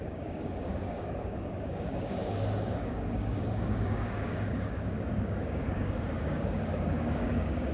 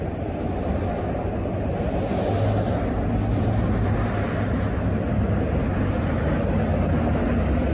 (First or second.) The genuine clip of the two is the second